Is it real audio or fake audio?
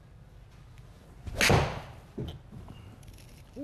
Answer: real